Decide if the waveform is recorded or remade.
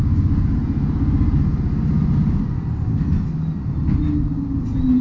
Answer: recorded